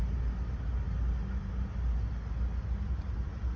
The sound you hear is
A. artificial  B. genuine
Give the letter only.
B